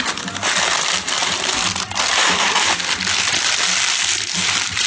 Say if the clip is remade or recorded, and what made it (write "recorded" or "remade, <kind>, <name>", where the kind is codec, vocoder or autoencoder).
recorded